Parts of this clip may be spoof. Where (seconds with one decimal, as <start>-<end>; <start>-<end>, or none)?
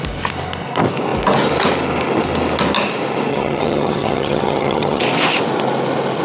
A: 3.3-5.0